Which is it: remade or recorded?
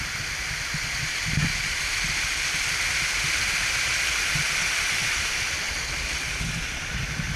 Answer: recorded